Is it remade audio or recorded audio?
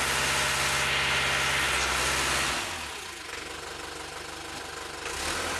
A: recorded